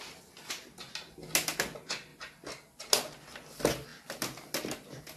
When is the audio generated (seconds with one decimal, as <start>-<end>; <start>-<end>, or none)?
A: none